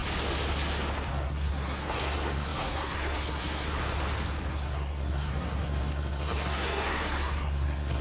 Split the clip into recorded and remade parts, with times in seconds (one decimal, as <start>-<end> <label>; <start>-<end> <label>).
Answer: 0.0-1.1 recorded; 1.1-3.8 remade; 3.8-4.5 recorded; 4.5-8.0 remade

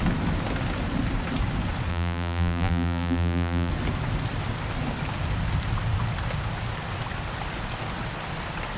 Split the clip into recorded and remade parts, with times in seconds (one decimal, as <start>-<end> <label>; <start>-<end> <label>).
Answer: 0.0-1.9 recorded; 1.9-3.7 remade; 3.7-8.8 recorded